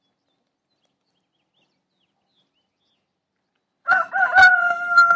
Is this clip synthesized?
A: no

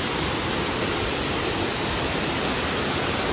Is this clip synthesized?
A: no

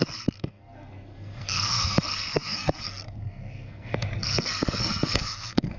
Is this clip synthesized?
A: yes